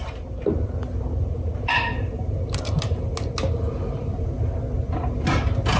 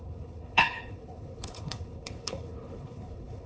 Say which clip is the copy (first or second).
second